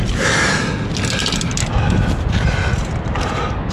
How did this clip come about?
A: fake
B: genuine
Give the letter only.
B